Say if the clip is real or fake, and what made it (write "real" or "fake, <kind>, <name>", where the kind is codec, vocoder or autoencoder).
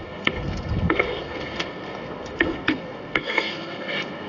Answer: fake, codec, SNAC